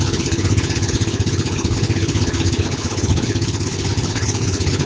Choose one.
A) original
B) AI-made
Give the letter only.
B